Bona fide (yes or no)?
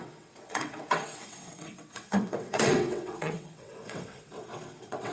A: no